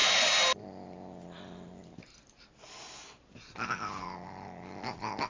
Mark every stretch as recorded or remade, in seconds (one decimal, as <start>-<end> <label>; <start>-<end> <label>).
0.0-5.3 recorded